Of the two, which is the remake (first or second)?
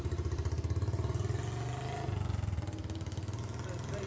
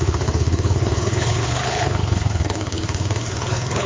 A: second